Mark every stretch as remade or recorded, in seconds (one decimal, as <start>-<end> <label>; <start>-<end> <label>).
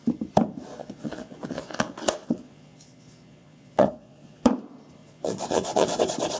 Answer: 0.0-0.7 recorded; 0.7-4.5 remade; 4.5-5.0 recorded; 5.0-6.0 remade; 6.0-6.4 recorded